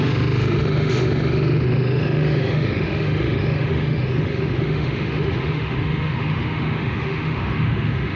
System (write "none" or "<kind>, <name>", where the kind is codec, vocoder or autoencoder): autoencoder, DAC-VAE